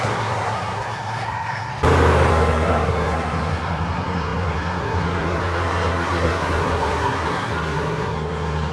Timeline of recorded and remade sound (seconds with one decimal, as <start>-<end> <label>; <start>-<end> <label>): 0.0-1.7 remade; 1.7-2.3 recorded; 2.3-8.7 remade